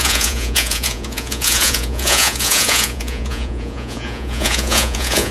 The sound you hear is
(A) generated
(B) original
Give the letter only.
A